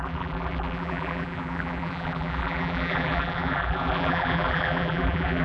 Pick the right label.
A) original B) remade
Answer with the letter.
B